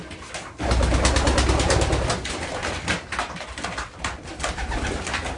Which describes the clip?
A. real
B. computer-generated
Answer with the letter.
A